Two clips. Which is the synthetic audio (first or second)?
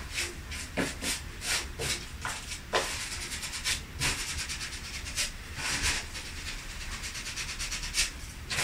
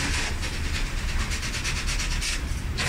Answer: first